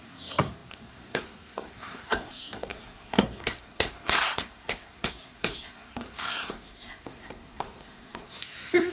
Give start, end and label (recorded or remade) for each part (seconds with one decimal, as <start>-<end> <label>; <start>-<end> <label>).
0.0-8.9 remade